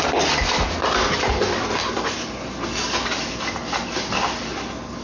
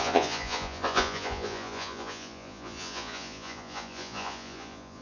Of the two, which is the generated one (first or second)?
second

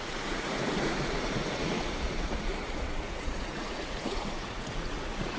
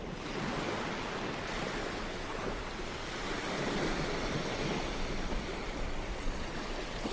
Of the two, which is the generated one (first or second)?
first